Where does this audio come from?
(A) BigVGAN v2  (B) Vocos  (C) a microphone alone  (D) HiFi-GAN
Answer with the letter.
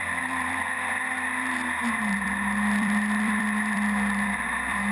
A